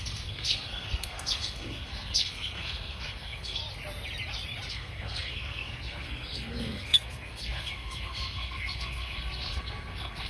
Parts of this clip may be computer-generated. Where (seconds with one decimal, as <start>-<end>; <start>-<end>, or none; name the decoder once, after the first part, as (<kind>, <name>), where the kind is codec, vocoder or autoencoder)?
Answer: 0.0-3.6 (codec, SNAC); 4.7-10.3